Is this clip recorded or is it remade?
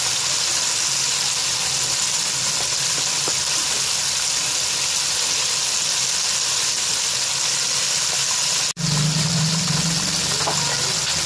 recorded